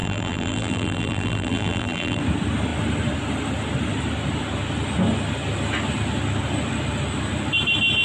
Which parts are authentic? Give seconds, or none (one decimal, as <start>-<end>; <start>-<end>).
2.2-8.0